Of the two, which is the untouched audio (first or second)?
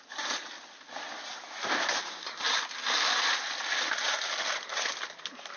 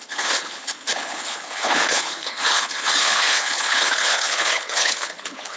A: first